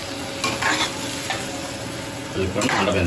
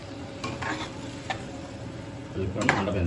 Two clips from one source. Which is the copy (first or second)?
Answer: second